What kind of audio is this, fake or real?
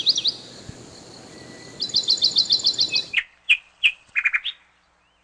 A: real